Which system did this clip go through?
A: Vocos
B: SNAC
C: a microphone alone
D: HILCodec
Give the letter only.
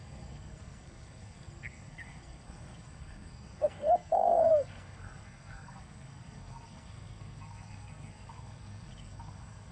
B